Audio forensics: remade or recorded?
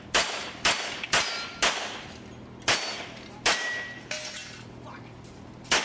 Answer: recorded